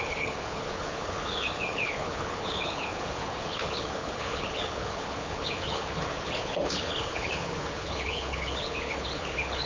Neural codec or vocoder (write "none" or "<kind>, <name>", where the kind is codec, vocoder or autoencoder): codec, HILCodec